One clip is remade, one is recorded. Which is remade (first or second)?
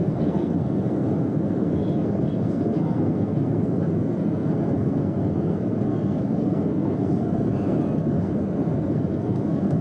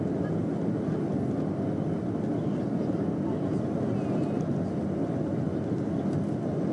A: first